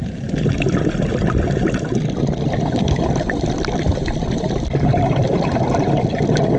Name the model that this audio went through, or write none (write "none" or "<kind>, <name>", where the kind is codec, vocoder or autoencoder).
none